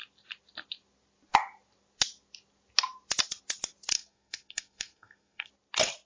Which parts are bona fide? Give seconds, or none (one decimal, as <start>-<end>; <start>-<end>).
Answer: 0.0-3.9; 5.5-6.1